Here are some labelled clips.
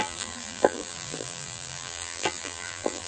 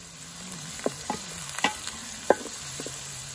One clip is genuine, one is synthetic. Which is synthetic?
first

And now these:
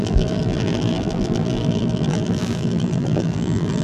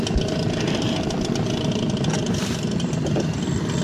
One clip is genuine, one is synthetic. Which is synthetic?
first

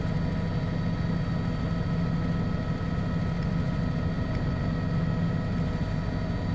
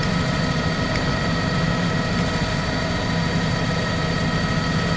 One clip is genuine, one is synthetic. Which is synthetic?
second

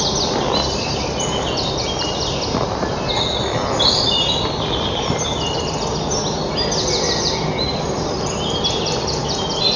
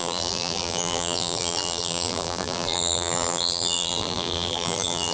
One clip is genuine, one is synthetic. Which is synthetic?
second